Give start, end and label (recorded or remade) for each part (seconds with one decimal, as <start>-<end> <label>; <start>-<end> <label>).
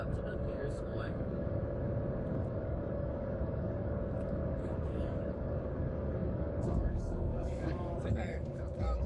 0.0-1.6 remade; 1.6-2.3 recorded; 2.3-9.1 remade